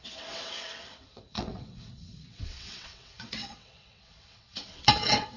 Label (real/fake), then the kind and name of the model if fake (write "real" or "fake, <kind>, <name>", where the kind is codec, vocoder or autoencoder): fake, vocoder, WaveNeXt